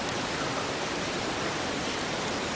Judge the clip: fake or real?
real